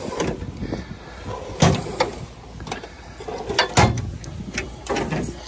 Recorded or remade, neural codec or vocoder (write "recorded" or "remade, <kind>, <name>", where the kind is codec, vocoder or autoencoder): recorded